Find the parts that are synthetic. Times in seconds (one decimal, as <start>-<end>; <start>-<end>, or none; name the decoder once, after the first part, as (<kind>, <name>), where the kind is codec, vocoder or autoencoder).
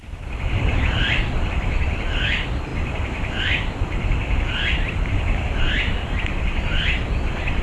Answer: 0.0-7.6 (vocoder, BigVGAN v2)